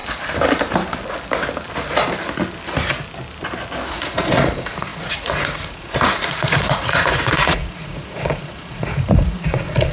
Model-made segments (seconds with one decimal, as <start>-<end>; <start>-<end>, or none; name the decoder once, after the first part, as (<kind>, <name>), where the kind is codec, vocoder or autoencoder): 3.9-9.9 (vocoder, Vocos)